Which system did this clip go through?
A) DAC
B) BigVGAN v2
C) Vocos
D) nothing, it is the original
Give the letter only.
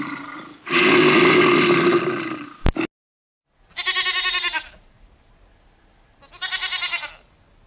D